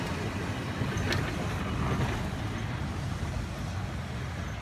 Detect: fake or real real